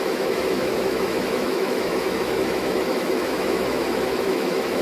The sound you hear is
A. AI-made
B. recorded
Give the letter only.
A